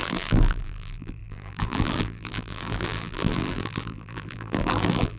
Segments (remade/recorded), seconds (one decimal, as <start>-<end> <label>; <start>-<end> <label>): 0.0-5.2 remade